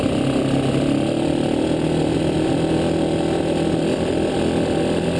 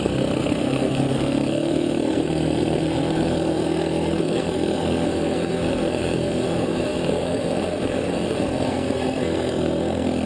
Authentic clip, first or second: first